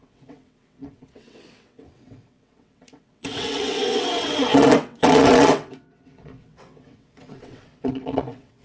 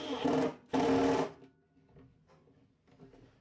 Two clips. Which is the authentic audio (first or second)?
second